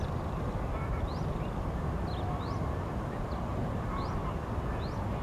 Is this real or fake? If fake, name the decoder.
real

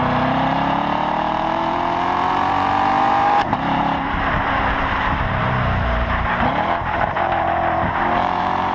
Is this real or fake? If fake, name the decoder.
fake, vocoder, BigVGAN v2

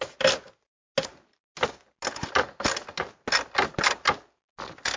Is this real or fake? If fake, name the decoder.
real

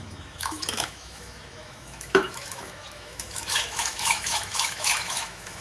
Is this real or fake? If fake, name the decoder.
fake, autoencoder, DAC-VAE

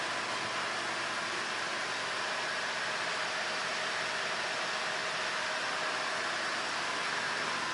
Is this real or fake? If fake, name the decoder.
real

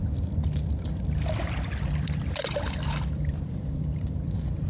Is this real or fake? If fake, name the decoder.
fake, vocoder, BigVGAN v2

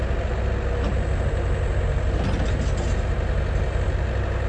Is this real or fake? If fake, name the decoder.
real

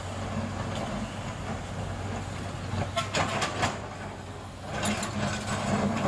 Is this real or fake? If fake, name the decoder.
real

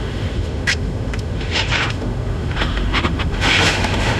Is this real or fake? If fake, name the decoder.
fake, autoencoder, DAC-VAE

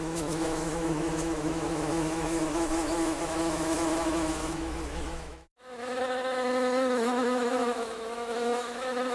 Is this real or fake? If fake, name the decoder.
fake, autoencoder, DAC-VAE